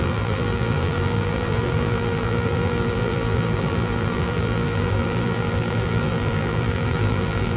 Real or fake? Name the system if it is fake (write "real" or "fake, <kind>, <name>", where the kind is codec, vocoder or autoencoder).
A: fake, vocoder, BigVGAN v2